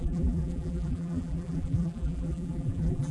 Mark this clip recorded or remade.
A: remade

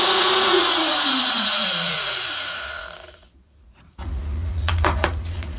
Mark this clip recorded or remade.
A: remade